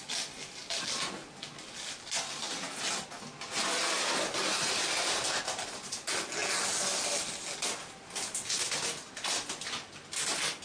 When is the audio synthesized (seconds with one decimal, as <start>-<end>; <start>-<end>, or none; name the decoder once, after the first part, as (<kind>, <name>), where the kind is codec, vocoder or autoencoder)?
none

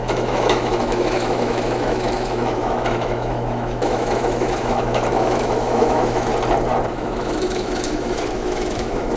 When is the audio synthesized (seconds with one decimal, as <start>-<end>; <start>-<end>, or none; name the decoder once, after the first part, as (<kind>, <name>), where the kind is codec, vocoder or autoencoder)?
0.0-6.3 (autoencoder, DAC-VAE); 6.9-9.2

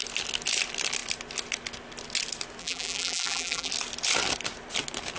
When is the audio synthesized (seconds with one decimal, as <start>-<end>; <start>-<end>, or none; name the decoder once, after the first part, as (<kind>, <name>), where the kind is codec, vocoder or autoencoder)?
2.6-3.7 (vocoder, BigVGAN v2)

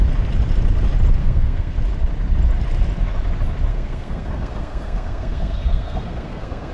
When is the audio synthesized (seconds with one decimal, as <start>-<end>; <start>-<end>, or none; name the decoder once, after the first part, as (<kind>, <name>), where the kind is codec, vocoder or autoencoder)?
1.2-1.7 (codec, SNAC); 3.7-6.7

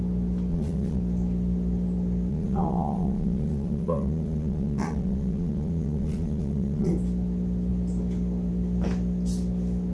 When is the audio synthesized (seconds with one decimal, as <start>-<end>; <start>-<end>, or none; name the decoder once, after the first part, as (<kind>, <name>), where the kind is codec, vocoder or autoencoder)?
0.5-1.0 (vocoder, Vocos); 2.3-6.9

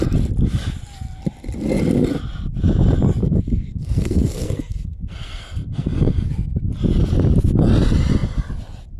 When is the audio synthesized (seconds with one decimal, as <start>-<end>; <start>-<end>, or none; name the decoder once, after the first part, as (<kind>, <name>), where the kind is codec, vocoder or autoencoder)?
3.2-6.3 (codec, SNAC)